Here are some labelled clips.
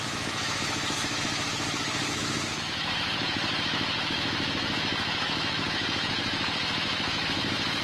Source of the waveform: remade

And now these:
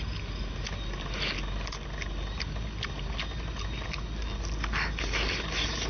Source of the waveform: recorded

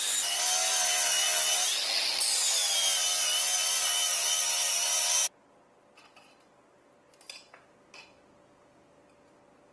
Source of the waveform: recorded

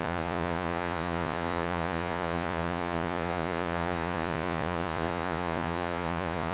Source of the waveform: remade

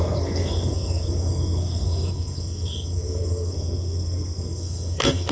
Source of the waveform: remade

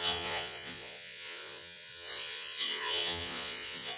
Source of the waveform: remade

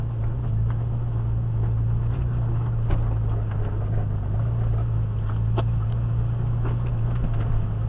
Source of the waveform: recorded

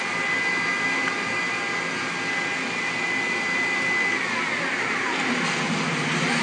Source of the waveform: recorded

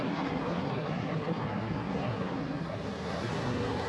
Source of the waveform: remade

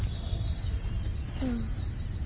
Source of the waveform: recorded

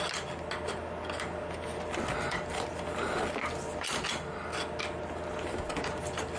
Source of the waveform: recorded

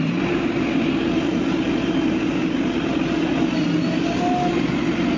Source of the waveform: recorded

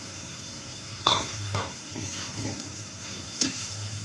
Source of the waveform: remade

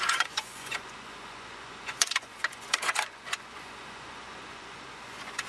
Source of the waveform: remade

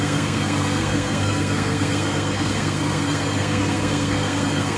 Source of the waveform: remade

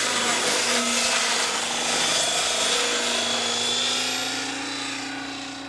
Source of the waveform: recorded